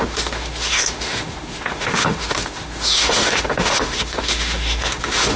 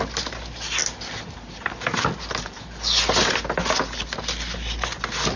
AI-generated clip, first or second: first